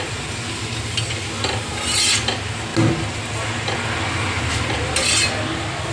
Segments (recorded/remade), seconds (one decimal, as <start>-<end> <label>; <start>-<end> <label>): 0.0-5.9 recorded